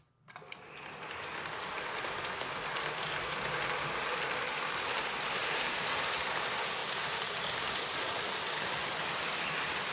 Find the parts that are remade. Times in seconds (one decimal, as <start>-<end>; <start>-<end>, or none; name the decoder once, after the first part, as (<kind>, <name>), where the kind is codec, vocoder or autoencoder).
5.4-5.9 (vocoder, BigVGAN v2); 6.8-7.5